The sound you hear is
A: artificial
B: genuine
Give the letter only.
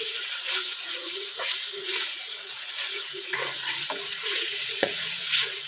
A